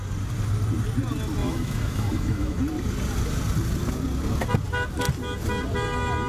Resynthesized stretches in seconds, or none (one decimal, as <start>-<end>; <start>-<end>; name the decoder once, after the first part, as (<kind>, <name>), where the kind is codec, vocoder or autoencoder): 1.4-2.6 (autoencoder, DAC-VAE)